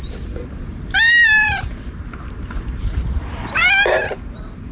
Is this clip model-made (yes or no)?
yes